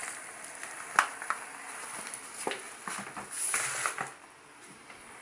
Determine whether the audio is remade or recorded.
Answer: recorded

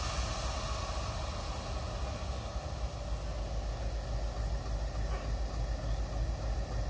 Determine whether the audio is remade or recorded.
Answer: recorded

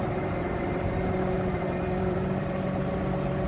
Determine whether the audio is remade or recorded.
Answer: remade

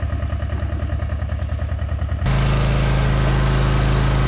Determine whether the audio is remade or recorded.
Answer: recorded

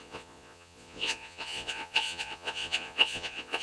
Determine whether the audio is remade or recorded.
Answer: remade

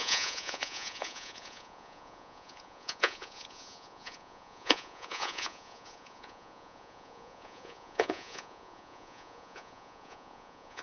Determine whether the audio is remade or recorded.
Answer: remade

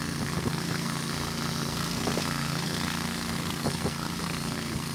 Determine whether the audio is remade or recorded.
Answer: remade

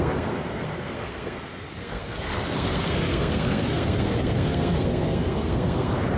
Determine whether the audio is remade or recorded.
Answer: remade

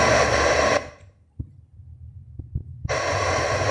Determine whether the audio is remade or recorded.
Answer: remade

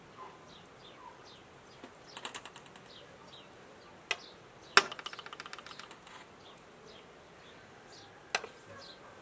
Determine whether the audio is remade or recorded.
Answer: recorded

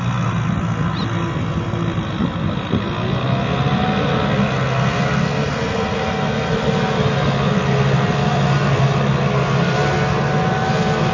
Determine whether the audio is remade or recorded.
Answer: recorded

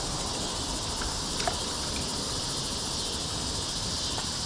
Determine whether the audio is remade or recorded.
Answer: remade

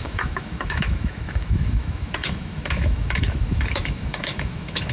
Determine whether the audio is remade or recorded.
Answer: remade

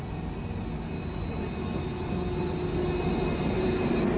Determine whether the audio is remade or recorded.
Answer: recorded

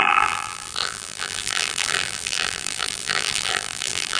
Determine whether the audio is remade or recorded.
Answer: remade